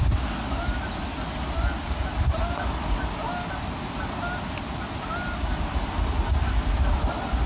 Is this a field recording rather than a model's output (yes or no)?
yes